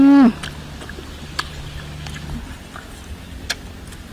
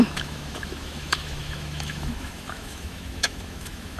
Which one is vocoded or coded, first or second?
second